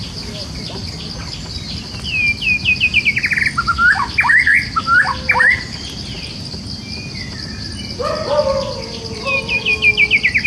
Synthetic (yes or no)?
no